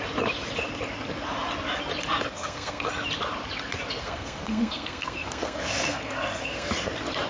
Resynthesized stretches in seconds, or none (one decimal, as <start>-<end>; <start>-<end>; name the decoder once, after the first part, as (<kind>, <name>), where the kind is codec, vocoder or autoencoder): 2.3-2.9 (codec, SNAC); 4.0-6.7